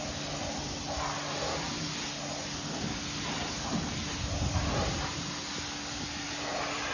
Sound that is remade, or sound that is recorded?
recorded